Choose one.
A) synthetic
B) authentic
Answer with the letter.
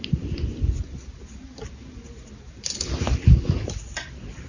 B